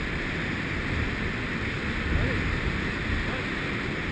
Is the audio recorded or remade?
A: recorded